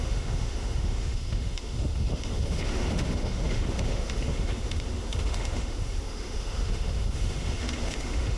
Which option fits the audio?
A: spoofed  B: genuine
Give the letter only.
A